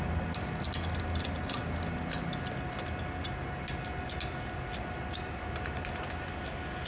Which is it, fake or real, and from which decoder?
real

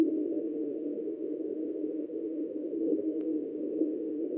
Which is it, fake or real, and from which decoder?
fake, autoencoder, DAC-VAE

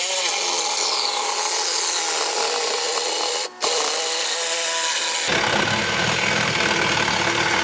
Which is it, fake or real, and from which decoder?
real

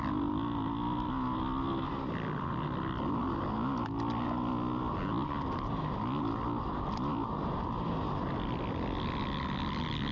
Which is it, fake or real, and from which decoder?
real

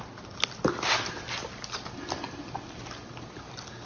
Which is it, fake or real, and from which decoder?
real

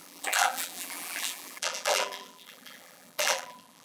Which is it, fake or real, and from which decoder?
fake, vocoder, BigVGAN v2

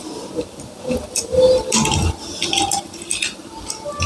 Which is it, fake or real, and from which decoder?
real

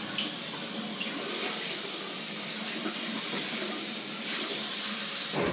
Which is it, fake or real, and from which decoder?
real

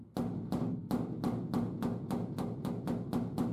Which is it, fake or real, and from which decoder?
real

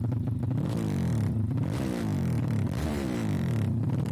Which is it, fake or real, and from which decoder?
fake, vocoder, BigVGAN v2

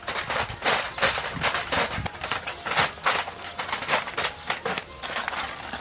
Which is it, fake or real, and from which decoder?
real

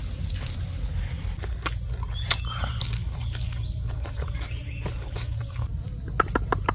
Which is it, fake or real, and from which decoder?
real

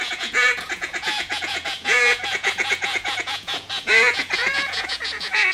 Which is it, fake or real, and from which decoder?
fake, vocoder, Vocos